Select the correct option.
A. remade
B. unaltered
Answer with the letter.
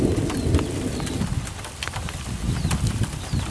B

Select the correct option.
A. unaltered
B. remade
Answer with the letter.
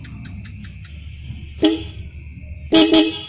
A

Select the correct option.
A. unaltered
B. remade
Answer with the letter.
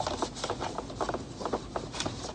A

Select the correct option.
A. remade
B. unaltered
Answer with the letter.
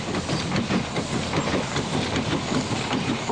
B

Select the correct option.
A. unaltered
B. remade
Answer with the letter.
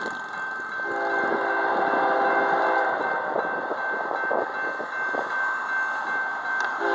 A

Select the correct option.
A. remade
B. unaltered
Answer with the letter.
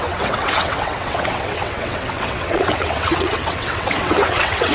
A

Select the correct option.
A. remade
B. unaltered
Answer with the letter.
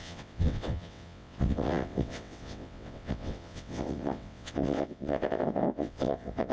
A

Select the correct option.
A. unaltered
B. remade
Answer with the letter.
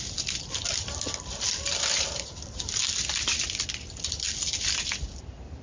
A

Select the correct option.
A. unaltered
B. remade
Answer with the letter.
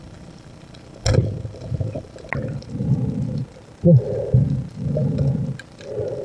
A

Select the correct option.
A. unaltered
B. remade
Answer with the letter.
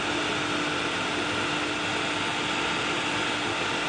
A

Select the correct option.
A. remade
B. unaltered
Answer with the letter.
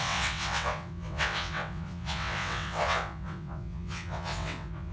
A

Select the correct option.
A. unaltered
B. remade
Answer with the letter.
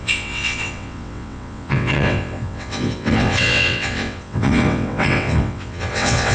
B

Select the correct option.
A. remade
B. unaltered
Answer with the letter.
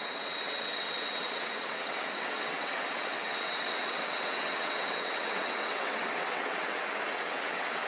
A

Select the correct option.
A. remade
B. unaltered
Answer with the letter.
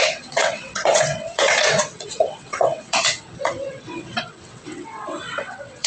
A